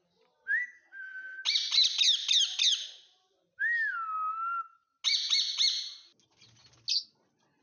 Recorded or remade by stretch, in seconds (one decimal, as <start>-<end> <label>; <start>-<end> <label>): 0.0-7.6 recorded